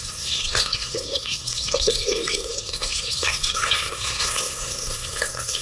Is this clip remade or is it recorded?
remade